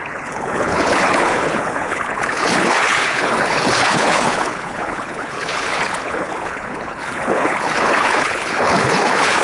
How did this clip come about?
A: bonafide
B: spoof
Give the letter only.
B